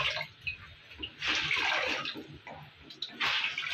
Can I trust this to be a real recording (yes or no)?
yes